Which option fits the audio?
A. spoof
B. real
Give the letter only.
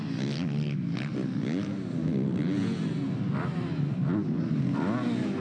B